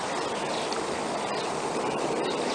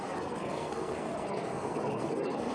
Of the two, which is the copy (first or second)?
second